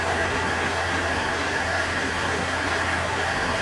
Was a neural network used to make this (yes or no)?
yes